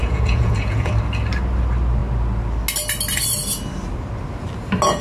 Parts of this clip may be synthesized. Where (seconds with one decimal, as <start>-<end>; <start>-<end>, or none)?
0.0-0.9